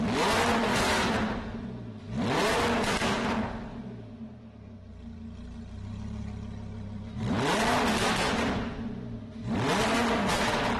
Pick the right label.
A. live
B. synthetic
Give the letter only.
A